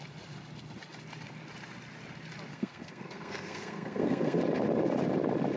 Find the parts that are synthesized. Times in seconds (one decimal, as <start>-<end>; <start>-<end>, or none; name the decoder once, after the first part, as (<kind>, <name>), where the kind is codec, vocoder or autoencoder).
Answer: 2.5-4.4 (codec, SNAC)

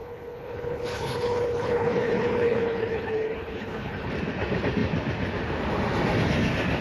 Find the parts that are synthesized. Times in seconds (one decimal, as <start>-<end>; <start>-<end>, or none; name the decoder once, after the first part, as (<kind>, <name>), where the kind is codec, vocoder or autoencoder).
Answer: 0.0-4.1 (codec, HILCodec)

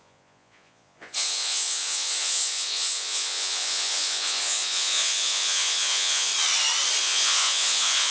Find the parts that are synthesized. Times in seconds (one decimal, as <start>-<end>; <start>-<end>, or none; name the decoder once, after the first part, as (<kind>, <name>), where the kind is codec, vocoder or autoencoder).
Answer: 0.0-6.3 (vocoder, Vocos); 7.0-8.1

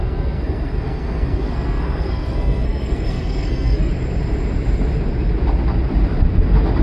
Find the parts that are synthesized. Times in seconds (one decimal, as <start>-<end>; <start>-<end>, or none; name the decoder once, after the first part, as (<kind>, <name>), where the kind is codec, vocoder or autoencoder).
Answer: 0.0-3.9 (codec, SNAC)